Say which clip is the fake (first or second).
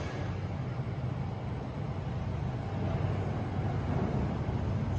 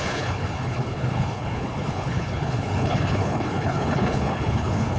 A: second